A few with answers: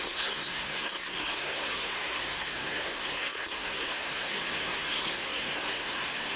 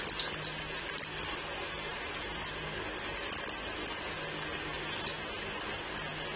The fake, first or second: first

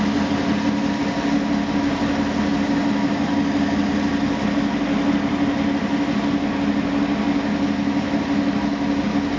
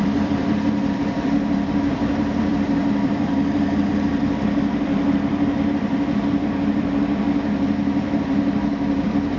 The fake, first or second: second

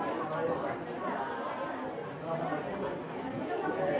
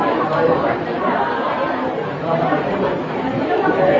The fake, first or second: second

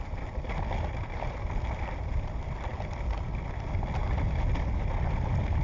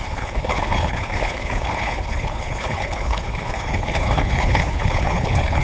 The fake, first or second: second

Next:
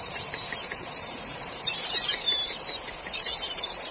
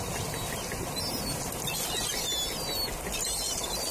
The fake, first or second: first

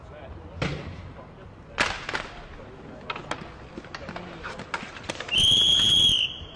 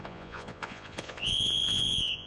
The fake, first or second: second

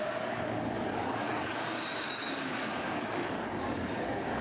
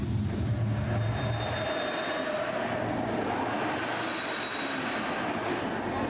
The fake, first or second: first